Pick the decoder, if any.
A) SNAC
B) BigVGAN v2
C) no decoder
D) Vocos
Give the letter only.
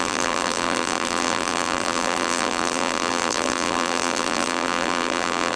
B